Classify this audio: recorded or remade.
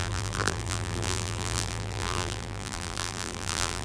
remade